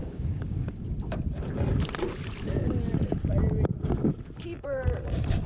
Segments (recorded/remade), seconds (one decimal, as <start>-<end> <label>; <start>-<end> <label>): 0.0-0.7 remade; 0.7-5.5 recorded